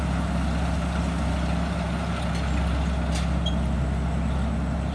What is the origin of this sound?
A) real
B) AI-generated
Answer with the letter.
A